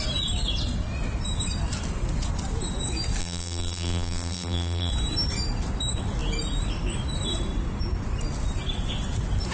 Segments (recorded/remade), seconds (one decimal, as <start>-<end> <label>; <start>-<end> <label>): 0.0-3.2 recorded; 3.2-4.9 remade; 4.9-9.5 recorded